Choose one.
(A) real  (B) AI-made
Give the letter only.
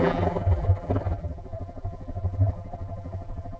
B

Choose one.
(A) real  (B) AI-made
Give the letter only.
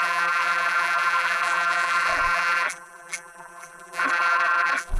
B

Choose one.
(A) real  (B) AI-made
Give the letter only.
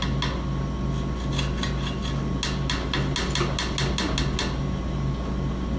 A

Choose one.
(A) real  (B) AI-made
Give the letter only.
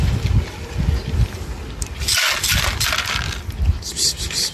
A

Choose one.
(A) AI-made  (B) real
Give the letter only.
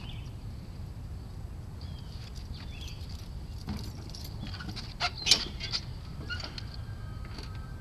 B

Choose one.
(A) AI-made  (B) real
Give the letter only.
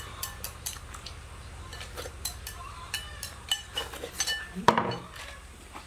A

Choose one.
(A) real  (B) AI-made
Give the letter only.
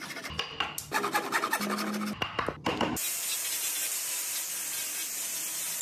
A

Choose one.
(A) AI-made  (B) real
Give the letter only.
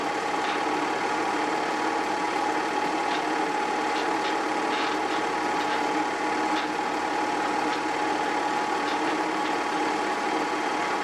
B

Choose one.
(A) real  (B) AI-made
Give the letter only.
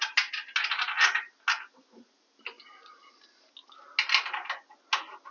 A